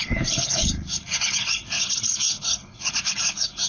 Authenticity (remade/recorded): remade